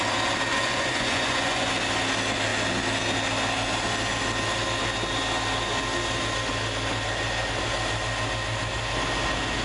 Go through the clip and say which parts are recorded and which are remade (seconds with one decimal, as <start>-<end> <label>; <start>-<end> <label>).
0.0-0.5 recorded; 0.5-1.7 remade; 1.7-9.6 recorded